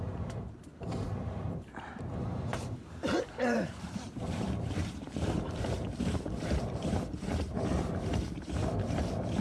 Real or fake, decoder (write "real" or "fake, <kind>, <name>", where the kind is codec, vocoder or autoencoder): fake, vocoder, BigVGAN v2